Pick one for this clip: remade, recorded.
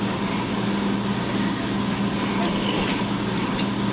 recorded